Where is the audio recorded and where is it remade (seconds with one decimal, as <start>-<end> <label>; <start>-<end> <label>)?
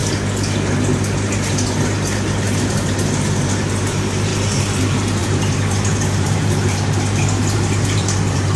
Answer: 0.0-2.4 recorded; 2.4-4.3 remade; 4.3-4.8 recorded; 4.8-8.6 remade